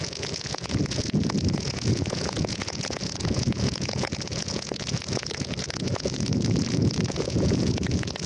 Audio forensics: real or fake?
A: fake